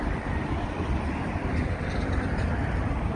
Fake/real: real